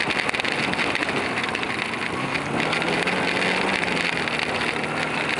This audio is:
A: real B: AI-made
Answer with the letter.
A